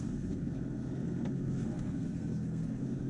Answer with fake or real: fake